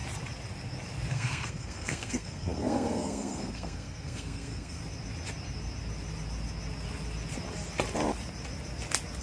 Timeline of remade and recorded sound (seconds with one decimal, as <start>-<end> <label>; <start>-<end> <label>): 0.0-1.1 recorded; 1.1-4.8 remade; 4.8-9.2 recorded